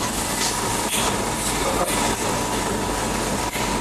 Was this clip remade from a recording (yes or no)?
no